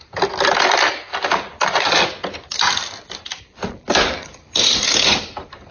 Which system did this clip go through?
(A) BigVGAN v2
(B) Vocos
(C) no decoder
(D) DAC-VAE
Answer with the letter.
C